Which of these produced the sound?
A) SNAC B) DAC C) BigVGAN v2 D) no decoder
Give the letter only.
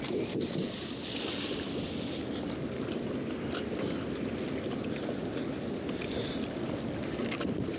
D